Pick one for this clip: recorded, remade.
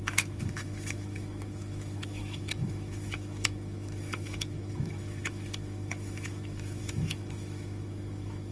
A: remade